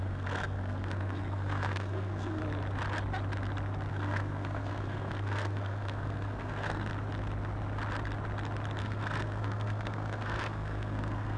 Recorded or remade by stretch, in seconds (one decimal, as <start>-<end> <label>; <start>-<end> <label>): 0.0-2.4 remade; 2.4-3.9 recorded; 3.9-6.9 remade; 6.9-8.8 recorded; 8.8-11.4 remade